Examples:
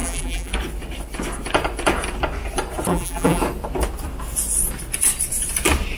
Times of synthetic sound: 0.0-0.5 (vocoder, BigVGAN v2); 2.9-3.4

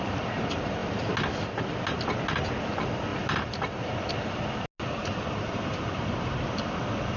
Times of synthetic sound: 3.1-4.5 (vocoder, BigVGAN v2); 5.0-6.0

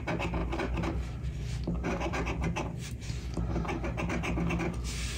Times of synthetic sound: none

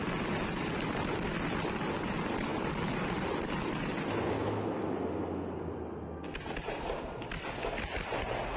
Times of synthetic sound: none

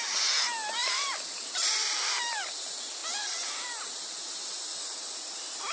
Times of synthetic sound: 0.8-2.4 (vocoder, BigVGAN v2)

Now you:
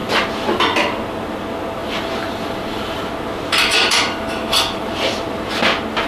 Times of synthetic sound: 1.8-5.5 (vocoder, BigVGAN v2)

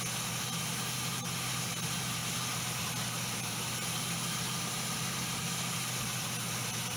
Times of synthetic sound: none

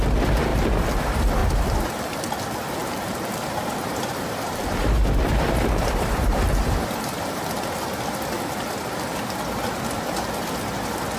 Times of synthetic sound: 2.8-7.4 (vocoder, BigVGAN v2)